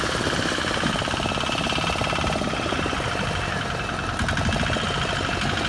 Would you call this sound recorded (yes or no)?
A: no